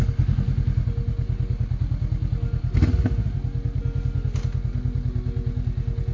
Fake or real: real